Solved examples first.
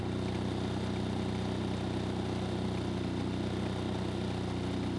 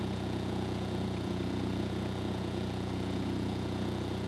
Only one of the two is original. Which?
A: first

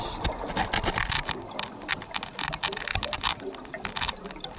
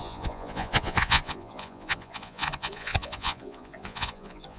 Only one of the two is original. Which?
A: first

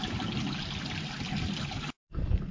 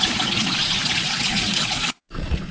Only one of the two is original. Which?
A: first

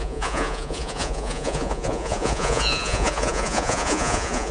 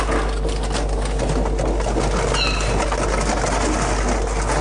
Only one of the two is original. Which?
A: second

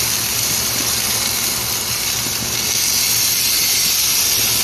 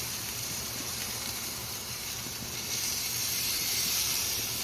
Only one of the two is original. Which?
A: first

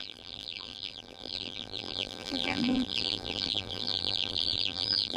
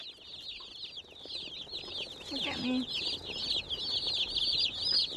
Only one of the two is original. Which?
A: second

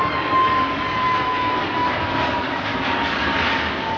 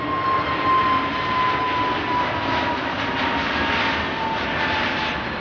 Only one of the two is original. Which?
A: second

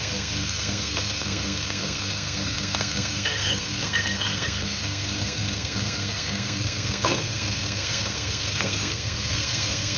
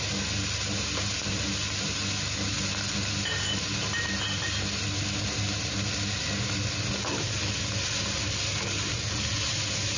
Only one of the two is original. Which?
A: second